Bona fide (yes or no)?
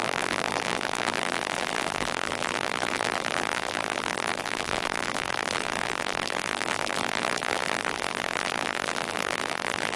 no